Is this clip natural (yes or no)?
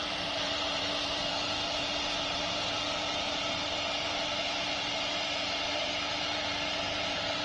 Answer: no